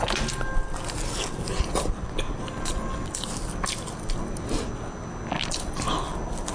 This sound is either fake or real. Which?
real